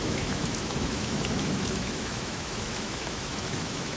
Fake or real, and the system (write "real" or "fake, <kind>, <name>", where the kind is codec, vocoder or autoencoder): fake, autoencoder, DAC-VAE